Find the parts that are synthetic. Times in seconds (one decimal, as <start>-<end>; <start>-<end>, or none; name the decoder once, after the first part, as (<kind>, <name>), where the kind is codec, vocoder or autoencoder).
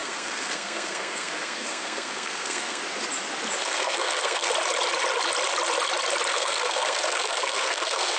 0.0-2.8 (codec, SNAC); 3.6-4.5; 6.3-8.2